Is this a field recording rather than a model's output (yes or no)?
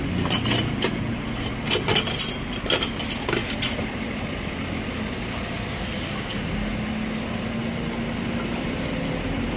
yes